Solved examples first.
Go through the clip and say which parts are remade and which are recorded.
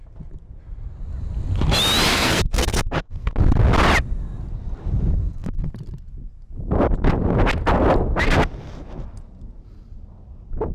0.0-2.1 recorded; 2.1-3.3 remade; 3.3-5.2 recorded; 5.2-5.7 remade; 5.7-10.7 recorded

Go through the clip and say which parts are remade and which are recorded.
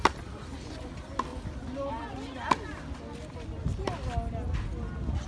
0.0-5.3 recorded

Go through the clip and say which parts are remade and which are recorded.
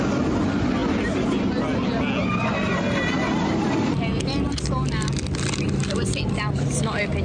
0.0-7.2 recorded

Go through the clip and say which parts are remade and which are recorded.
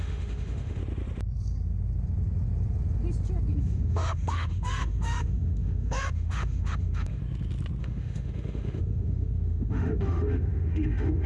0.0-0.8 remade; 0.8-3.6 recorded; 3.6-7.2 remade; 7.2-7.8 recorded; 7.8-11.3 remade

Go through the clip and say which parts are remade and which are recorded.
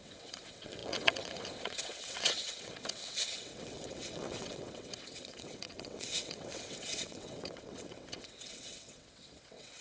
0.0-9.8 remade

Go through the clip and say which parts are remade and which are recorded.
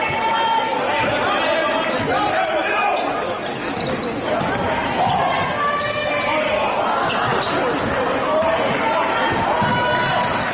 0.0-10.5 recorded